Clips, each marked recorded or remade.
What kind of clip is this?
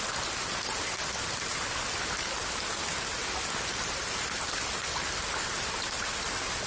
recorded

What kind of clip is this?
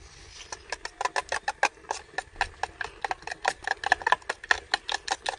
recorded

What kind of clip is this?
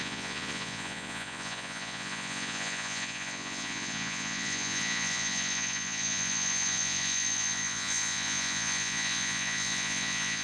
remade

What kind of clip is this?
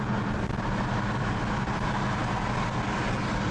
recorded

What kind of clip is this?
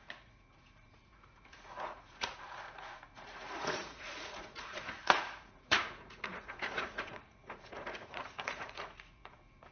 remade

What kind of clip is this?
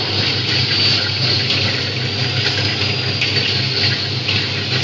recorded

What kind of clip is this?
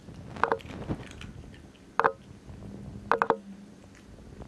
recorded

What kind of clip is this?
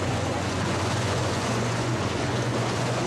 remade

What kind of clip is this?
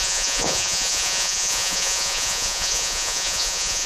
remade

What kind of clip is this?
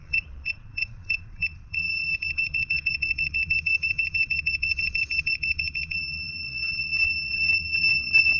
remade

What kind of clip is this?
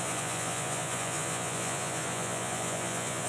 remade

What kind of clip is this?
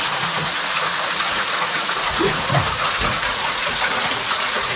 remade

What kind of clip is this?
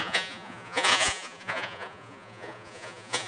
remade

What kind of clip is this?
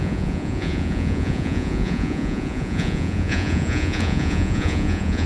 remade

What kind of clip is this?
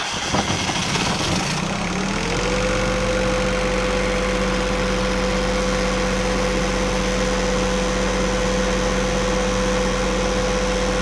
recorded